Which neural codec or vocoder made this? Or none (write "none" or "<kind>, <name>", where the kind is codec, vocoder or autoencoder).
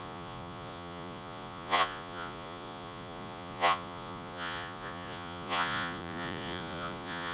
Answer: vocoder, Vocos